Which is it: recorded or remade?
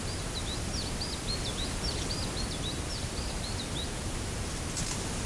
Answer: recorded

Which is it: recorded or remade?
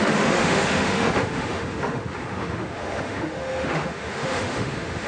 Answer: remade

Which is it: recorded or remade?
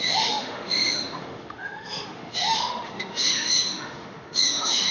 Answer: remade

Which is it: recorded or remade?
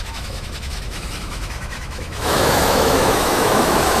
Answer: remade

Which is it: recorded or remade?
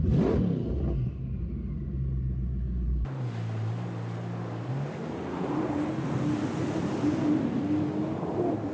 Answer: recorded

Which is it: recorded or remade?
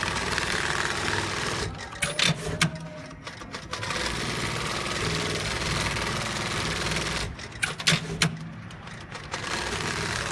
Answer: recorded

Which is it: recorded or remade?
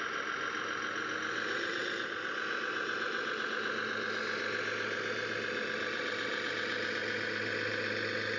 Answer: recorded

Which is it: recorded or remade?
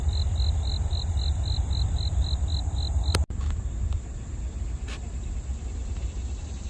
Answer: recorded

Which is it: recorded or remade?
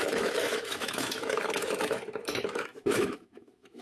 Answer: remade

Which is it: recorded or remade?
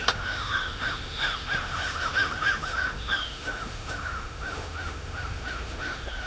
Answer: remade